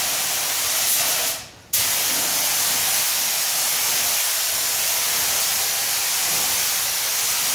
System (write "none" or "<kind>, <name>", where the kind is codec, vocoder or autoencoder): none